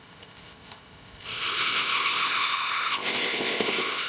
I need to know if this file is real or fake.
fake